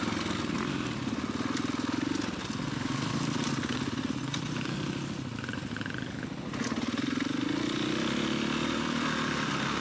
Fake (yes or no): no